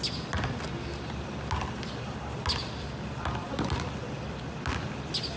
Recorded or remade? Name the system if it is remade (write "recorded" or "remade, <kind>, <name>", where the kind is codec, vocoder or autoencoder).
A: recorded